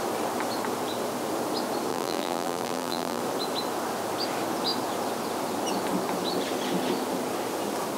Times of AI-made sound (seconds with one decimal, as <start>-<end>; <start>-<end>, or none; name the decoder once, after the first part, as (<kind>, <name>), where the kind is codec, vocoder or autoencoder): 1.9-3.2 (vocoder, BigVGAN v2)